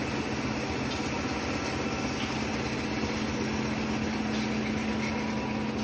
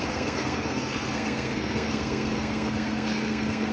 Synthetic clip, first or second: second